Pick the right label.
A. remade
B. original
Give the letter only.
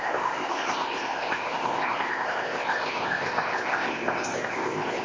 A